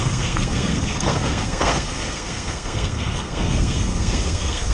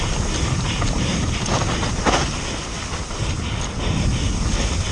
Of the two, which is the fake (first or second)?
first